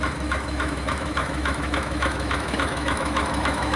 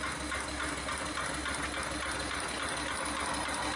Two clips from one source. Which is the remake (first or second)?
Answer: first